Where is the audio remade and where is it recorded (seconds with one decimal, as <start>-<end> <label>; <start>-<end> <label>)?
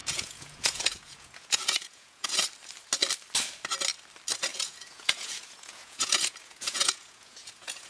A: 0.0-2.4 remade; 2.4-4.5 recorded; 4.5-7.9 remade